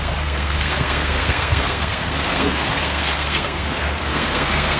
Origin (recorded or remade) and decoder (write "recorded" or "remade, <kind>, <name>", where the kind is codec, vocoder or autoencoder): remade, codec, SNAC